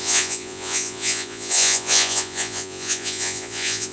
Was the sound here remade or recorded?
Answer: remade